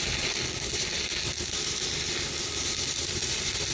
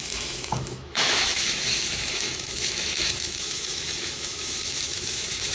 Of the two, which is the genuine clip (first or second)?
first